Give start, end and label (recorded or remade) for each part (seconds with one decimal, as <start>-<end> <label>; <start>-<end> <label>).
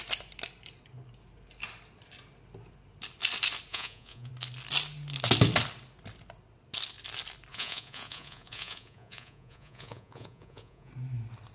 0.0-3.7 recorded; 3.7-4.3 remade; 4.3-7.5 recorded; 7.5-10.9 remade; 10.9-11.5 recorded